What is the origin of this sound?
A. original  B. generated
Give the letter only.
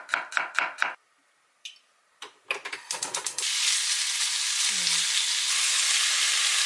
A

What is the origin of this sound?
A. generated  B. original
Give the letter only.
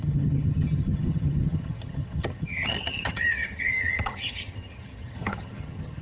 A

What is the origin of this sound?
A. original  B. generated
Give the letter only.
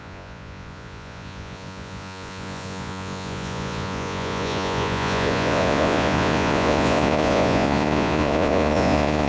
B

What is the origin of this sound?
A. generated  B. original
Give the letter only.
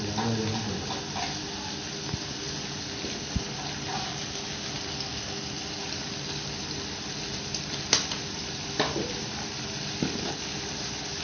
B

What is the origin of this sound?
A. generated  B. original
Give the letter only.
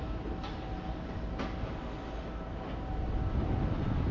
B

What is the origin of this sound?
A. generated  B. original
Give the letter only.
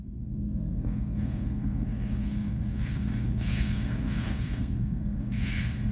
A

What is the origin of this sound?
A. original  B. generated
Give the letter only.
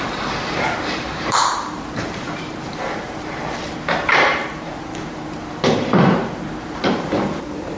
B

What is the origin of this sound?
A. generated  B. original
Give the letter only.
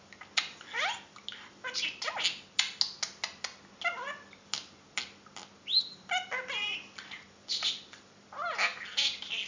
B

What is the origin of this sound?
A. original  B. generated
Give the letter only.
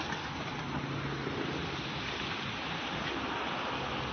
A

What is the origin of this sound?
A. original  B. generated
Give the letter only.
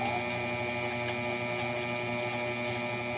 A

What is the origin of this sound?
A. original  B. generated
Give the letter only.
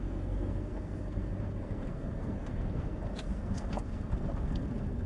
B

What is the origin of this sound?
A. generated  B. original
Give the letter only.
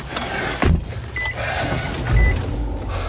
B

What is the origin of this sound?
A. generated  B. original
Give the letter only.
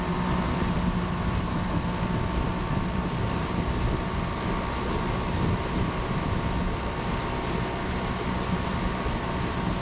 B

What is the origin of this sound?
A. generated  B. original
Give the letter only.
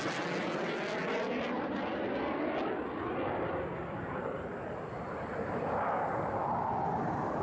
B